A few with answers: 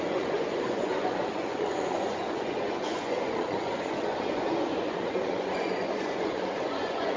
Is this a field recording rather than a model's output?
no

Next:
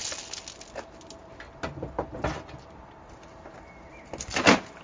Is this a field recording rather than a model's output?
yes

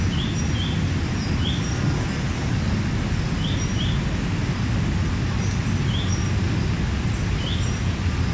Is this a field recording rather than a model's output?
yes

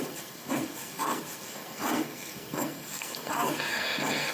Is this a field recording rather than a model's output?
no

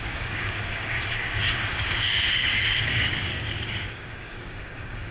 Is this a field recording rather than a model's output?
no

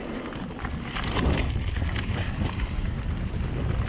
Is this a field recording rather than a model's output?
no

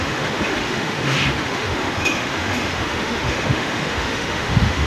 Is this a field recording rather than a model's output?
no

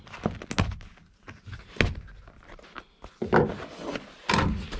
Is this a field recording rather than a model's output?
yes